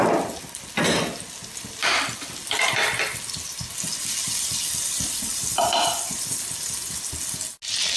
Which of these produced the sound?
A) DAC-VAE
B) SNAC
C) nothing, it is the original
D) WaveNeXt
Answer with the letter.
C